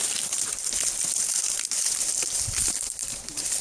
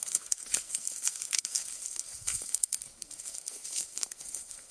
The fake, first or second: second